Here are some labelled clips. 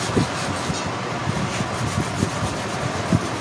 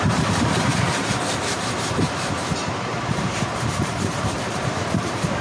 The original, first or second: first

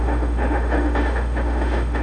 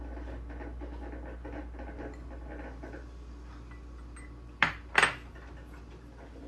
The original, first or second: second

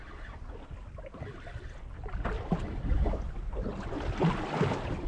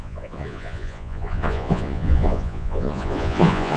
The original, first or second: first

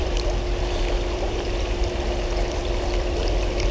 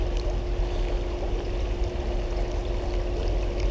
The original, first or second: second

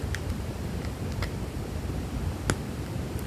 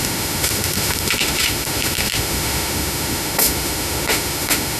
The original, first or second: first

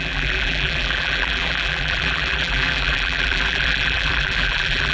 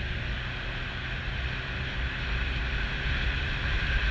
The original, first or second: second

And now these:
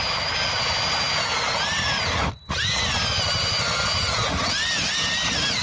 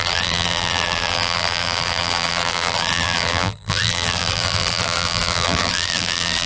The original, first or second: first